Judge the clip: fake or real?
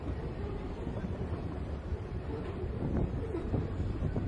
fake